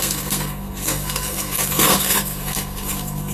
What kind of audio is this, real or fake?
fake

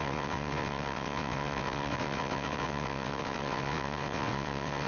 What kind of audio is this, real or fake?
fake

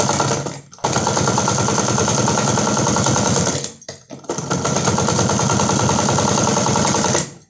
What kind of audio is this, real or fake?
real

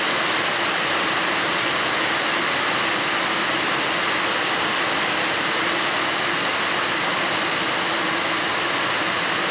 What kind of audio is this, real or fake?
real